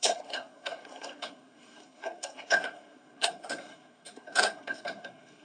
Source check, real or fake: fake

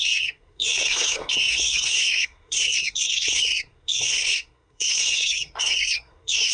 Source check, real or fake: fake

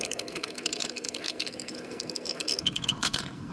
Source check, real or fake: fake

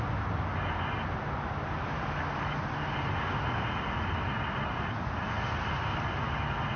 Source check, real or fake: real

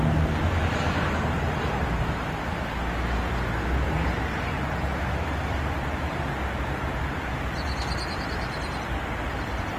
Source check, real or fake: real